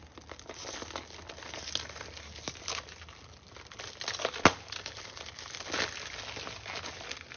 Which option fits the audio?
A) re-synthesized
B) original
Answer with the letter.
B